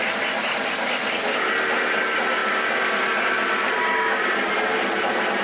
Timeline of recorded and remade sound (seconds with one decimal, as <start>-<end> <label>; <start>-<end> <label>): 0.0-5.4 recorded